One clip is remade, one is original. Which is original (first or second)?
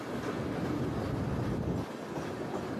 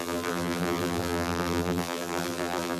first